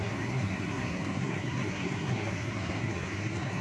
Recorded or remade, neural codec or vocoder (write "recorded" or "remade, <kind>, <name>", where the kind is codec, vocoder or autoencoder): remade, codec, SNAC